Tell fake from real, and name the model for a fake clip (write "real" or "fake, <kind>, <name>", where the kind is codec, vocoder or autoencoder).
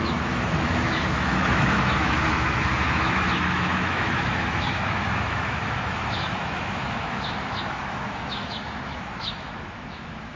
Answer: fake, autoencoder, DAC-VAE